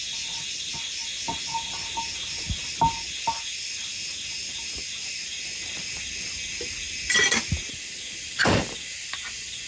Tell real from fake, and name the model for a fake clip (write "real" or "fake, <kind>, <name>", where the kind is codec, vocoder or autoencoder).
real